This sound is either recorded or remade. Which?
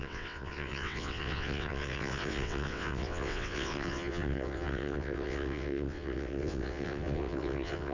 remade